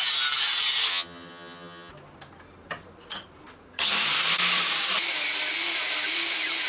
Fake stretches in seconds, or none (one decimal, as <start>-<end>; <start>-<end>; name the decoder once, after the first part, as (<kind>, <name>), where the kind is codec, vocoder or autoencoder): 0.9-1.9 (vocoder, HiFi-GAN)